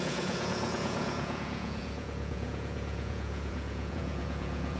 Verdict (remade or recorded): remade